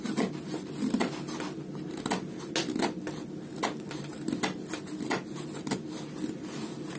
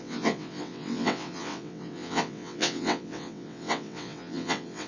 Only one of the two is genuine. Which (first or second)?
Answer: first